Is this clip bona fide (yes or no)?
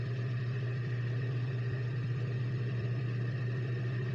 no